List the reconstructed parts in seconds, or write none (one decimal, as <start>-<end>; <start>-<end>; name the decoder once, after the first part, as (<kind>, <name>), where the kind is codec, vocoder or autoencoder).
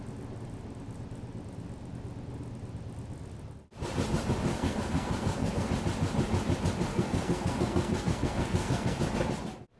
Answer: 4.5-5.7 (codec, SNAC); 6.9-9.0